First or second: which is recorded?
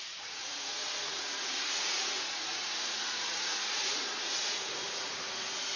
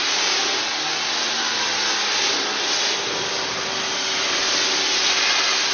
second